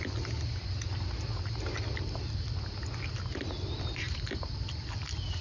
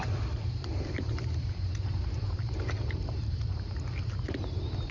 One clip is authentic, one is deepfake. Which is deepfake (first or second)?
second